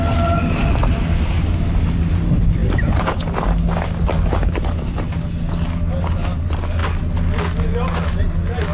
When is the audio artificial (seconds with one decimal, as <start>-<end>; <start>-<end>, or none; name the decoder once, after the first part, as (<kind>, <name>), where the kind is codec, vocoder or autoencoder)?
none